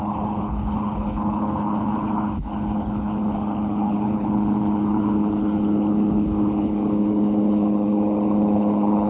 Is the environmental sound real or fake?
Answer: fake